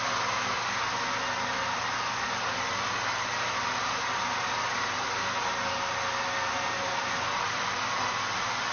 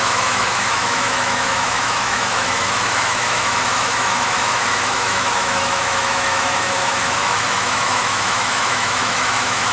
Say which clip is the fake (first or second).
second